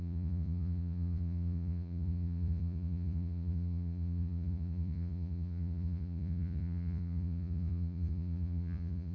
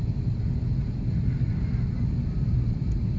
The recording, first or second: second